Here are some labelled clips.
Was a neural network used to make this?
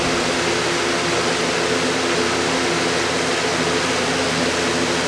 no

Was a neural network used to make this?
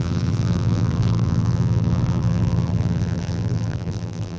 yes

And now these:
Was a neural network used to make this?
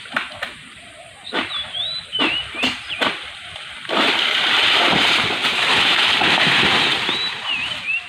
yes